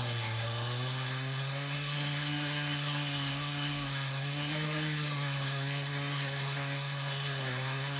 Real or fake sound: fake